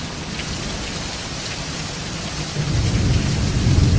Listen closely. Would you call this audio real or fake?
real